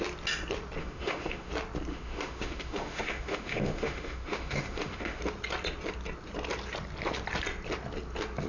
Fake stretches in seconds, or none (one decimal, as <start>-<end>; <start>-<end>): 0.8-1.5; 1.9-5.2